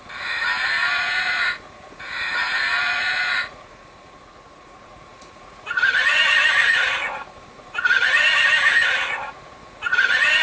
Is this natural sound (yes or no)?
no